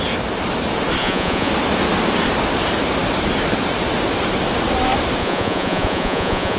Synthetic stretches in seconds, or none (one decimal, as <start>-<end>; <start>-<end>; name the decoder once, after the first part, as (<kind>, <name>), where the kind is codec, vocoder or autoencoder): 1.0-1.5 (vocoder, Vocos); 5.2-6.6